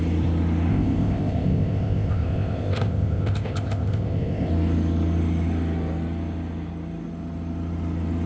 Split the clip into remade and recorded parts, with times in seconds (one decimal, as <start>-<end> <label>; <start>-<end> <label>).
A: 0.0-0.7 recorded; 0.7-4.5 remade; 4.5-8.3 recorded

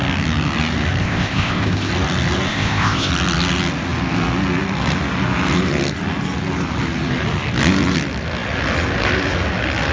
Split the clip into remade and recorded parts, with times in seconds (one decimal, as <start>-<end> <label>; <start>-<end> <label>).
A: 0.0-1.0 recorded; 1.0-1.9 remade; 1.9-2.5 recorded; 2.5-3.1 remade; 3.1-9.9 recorded

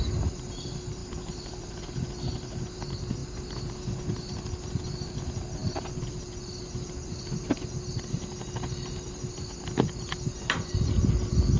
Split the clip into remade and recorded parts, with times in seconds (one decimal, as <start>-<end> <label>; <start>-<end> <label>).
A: 0.0-11.6 recorded

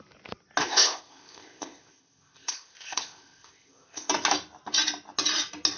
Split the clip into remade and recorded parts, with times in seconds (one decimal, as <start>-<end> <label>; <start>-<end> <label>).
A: 0.0-0.6 recorded; 0.6-4.1 remade; 4.1-5.8 recorded

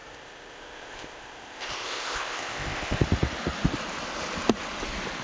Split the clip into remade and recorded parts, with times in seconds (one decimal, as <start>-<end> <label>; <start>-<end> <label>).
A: 0.0-3.0 remade; 3.0-5.2 recorded

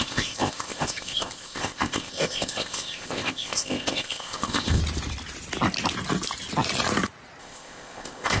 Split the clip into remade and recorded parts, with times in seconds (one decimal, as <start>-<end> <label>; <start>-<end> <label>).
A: 0.0-4.8 remade; 4.8-7.4 recorded; 7.4-8.4 remade